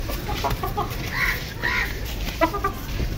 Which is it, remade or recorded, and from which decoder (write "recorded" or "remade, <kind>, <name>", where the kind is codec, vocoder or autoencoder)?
recorded